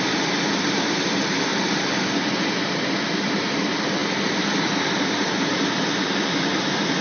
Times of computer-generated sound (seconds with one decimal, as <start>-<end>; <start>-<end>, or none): none